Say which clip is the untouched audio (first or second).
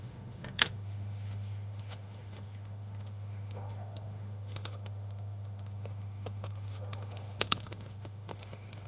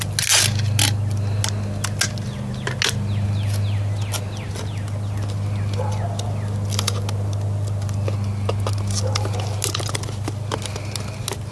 second